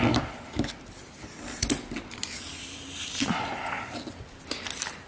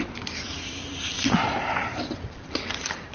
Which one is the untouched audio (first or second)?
first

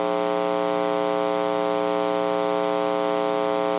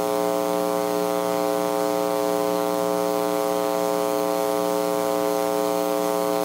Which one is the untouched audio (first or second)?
first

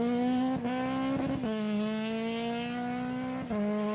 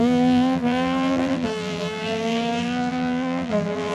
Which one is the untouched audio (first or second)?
first